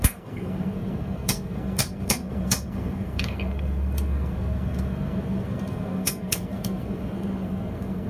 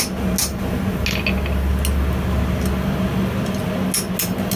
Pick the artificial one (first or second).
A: first